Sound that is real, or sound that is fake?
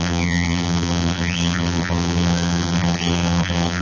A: fake